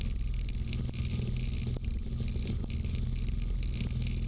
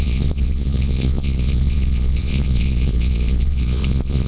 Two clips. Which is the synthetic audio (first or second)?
second